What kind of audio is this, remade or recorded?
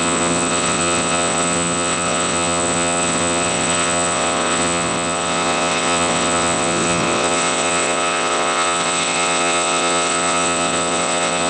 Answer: remade